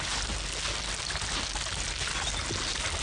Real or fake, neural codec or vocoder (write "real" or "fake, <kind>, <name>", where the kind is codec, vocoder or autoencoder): real